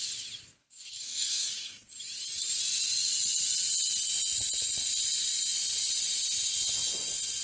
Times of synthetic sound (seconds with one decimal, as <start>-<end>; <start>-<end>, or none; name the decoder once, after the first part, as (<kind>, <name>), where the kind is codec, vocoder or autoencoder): 0.6-1.9 (codec, DAC)